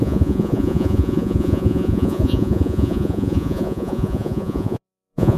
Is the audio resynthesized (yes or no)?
yes